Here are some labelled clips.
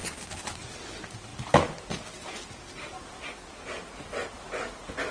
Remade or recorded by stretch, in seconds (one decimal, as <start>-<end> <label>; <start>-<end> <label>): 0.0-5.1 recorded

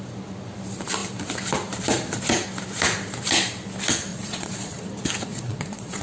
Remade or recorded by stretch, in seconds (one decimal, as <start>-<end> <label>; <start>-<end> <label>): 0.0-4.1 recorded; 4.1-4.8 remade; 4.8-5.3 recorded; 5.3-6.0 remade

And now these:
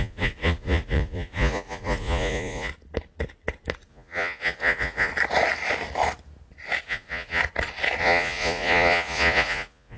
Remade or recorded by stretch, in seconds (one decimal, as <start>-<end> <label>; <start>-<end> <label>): 0.0-2.7 remade; 2.7-3.9 recorded; 3.9-5.1 remade; 5.1-6.8 recorded; 6.8-7.4 remade; 7.4-8.0 recorded; 8.0-10.0 remade

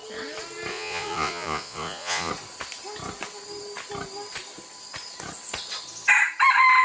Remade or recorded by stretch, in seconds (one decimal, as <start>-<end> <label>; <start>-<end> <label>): 0.0-0.7 recorded; 0.7-2.3 remade; 2.3-6.8 recorded

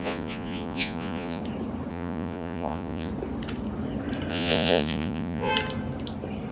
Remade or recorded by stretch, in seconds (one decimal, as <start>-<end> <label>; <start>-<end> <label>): 0.0-1.4 remade; 1.4-1.9 recorded; 1.9-3.1 remade; 3.1-4.3 recorded; 4.3-5.5 remade; 5.5-6.5 recorded